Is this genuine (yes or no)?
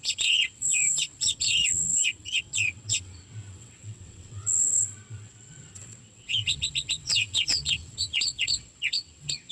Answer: no